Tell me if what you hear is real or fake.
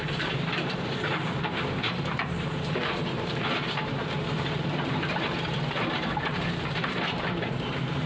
fake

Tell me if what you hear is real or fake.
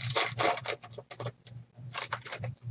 fake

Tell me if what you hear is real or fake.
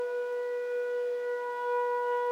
real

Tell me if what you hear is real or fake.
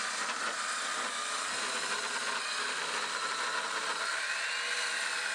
real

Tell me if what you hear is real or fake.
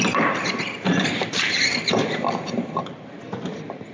fake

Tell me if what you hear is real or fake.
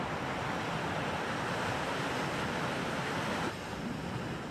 real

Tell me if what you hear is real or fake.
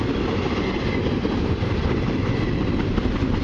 fake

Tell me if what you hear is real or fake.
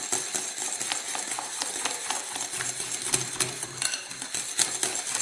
real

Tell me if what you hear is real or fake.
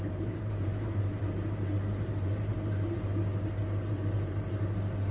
fake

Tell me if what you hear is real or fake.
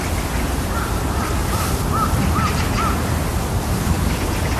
real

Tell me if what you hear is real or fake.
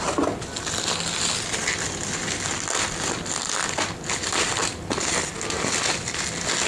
real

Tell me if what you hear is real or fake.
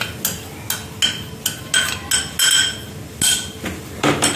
real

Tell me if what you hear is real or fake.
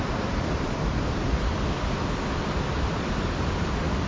fake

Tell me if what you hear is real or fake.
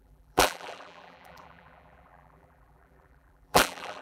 fake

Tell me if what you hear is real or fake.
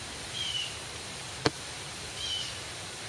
fake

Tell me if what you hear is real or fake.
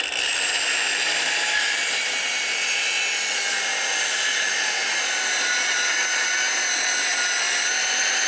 fake